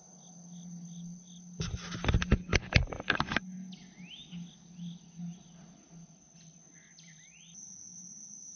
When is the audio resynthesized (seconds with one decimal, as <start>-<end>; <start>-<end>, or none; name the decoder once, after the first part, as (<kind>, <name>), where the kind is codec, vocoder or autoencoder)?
none

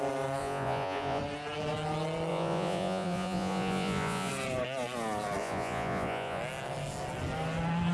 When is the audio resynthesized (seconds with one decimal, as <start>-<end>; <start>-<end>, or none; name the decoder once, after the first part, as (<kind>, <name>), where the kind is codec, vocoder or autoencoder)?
0.4-1.2 (vocoder, Vocos); 2.3-4.3; 5.4-6.4

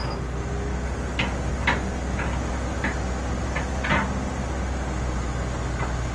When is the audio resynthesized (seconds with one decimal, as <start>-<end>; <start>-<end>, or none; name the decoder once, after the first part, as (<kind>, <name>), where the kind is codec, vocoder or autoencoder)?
none

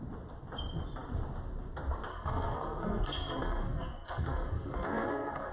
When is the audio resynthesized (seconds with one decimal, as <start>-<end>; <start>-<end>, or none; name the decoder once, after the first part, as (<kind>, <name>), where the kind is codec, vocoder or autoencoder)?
2.1-5.5 (codec, SNAC)

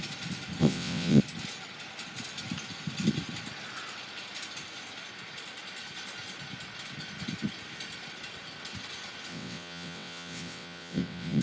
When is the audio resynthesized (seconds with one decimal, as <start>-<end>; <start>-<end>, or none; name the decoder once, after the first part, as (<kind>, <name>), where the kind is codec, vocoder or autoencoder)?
0.6-1.2 (vocoder, WaveNeXt); 9.3-11.4

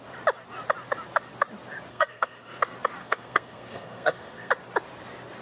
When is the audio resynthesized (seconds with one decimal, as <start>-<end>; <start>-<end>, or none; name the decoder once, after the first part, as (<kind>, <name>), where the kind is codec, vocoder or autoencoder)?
1.9-2.6 (codec, SNAC); 3.0-4.5